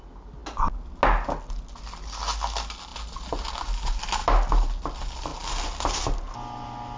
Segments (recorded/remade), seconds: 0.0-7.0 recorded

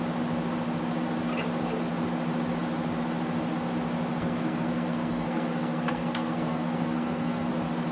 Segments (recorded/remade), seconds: 0.0-4.1 recorded; 4.1-7.5 remade; 7.5-7.9 recorded

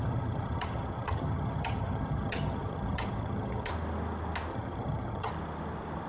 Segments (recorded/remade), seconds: 0.0-3.7 remade; 3.7-4.5 recorded; 4.5-5.3 remade; 5.3-6.1 recorded

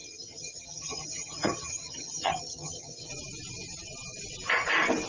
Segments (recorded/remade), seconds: 0.0-3.1 remade; 3.1-5.1 recorded

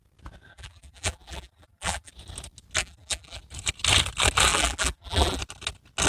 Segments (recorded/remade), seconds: 0.0-0.5 recorded; 0.5-2.1 remade; 2.1-2.8 recorded; 2.8-3.4 remade; 3.4-4.5 recorded; 4.5-5.4 remade; 5.4-6.1 recorded

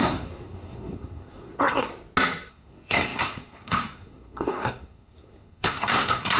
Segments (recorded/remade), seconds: 0.0-1.9 remade; 1.9-2.5 recorded; 2.5-6.4 remade

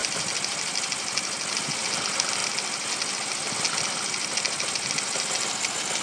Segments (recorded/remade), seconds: 0.0-6.0 recorded

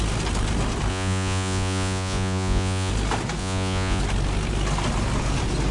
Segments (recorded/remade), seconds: 0.0-0.9 recorded; 0.9-2.9 remade; 2.9-3.4 recorded; 3.4-4.0 remade; 4.0-5.7 recorded